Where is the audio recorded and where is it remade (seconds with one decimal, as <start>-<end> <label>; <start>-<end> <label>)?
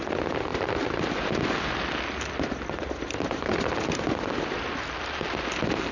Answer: 0.0-5.9 recorded